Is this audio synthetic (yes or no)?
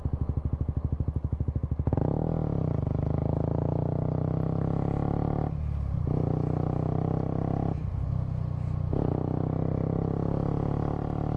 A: no